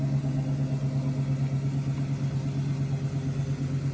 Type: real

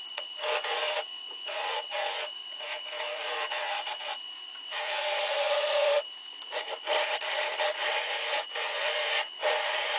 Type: fake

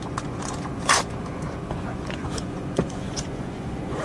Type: fake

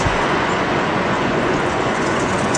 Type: fake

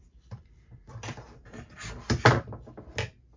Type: real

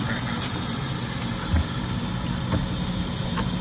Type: real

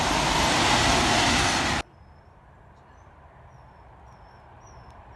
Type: real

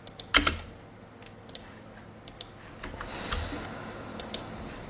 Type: real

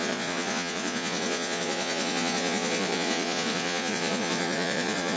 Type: fake